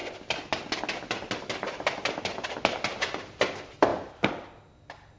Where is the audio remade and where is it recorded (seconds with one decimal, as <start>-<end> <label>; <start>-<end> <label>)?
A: 0.0-5.2 recorded